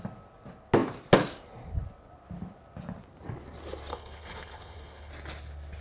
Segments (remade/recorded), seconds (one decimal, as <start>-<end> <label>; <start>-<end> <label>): 0.0-3.9 recorded; 3.9-5.1 remade; 5.1-5.8 recorded